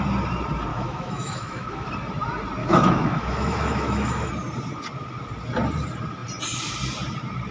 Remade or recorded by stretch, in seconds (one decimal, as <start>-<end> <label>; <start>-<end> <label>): 0.0-0.7 recorded; 0.7-1.9 remade; 1.9-2.6 recorded; 2.6-4.3 remade; 4.3-7.5 recorded